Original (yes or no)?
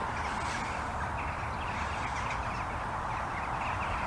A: yes